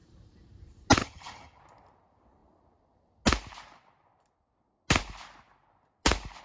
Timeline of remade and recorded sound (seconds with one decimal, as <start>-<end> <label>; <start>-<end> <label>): 0.0-1.0 recorded; 1.0-1.6 remade; 1.6-6.4 recorded